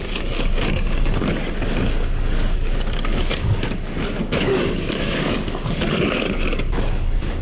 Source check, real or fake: fake